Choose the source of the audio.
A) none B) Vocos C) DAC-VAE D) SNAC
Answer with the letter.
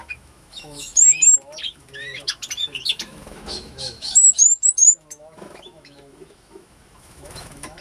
C